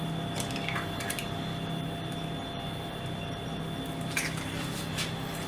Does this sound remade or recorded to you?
recorded